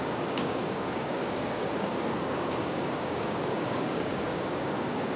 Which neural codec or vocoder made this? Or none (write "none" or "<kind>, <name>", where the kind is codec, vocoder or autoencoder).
codec, DAC